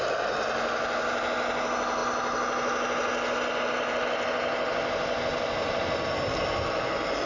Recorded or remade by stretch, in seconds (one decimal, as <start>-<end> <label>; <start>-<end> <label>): 0.0-7.3 recorded